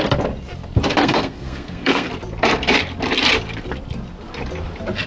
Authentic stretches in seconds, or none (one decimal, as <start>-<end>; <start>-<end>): 0.0-1.0; 2.1-5.1